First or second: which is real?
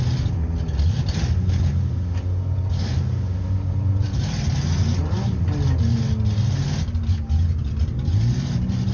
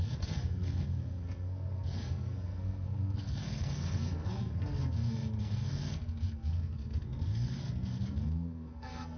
first